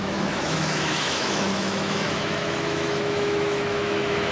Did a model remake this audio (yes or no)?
yes